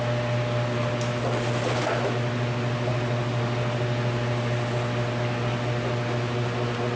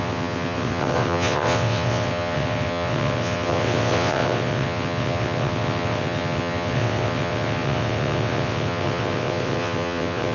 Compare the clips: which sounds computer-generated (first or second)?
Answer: second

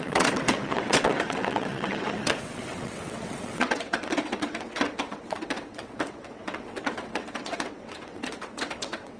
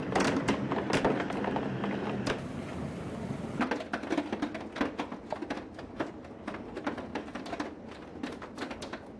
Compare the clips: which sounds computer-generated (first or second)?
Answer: first